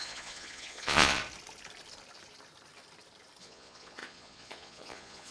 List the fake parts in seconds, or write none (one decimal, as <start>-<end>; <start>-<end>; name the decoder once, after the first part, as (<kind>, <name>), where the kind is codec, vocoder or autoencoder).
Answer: 0.0-1.2 (vocoder, Vocos); 3.4-5.3